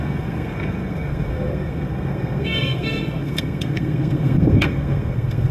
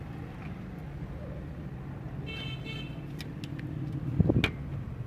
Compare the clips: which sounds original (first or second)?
second